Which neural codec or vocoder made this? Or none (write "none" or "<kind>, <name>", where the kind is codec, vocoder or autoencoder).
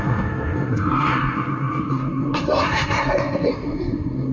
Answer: codec, SNAC